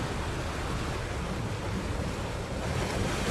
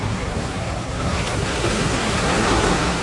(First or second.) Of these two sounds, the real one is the first